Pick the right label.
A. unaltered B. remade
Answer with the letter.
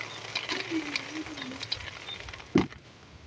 A